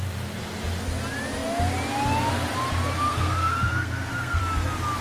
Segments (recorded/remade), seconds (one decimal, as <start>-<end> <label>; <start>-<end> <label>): 0.0-3.1 recorded; 3.1-4.4 remade; 4.4-5.0 recorded